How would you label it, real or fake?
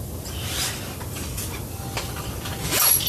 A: real